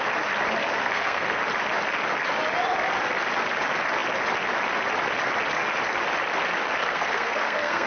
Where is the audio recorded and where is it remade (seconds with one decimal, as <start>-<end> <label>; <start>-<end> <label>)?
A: 0.0-0.8 recorded; 0.8-1.4 remade; 1.4-6.8 recorded; 6.8-7.9 remade